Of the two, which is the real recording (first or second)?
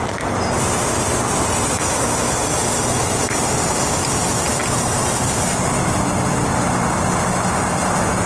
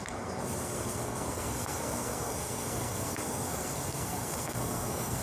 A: first